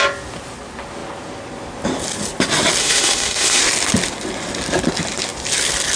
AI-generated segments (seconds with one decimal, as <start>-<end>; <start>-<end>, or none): 2.8-3.6